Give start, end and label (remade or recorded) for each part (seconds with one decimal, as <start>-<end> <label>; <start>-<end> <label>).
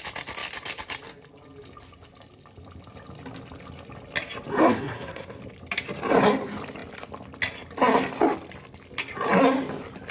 0.0-4.5 recorded; 4.5-5.4 remade; 5.4-10.1 recorded